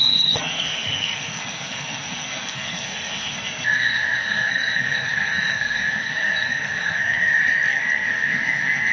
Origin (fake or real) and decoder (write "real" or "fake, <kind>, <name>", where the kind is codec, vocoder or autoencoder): fake, codec, SNAC